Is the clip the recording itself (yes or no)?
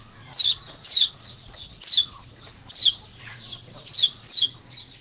no